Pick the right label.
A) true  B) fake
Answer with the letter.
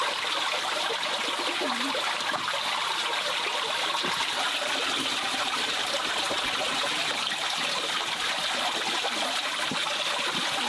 A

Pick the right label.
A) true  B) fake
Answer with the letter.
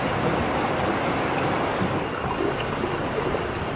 A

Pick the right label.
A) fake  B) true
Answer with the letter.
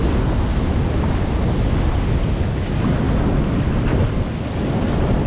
B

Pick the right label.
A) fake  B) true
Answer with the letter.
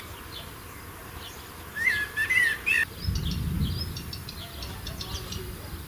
B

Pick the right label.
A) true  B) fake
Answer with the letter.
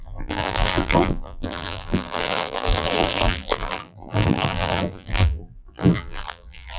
B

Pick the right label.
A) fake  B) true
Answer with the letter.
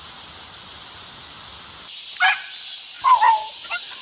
B